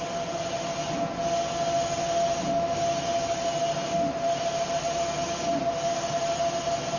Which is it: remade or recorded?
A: recorded